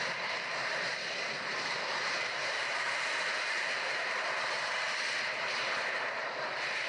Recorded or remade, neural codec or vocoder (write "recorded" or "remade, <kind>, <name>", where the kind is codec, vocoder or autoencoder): remade, vocoder, BigVGAN v2